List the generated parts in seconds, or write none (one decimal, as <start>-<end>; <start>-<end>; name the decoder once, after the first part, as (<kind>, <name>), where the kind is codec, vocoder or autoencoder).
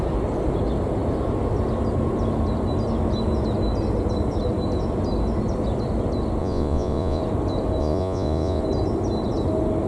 6.4-7.2 (vocoder, Vocos); 7.8-8.6